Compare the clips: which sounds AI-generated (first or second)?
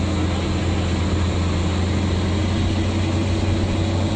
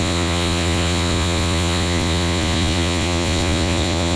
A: second